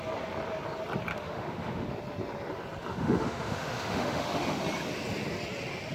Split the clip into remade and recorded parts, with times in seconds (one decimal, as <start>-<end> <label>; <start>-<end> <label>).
0.0-1.1 recorded; 1.1-1.9 remade; 1.9-2.8 recorded; 2.8-4.6 remade; 4.6-5.9 recorded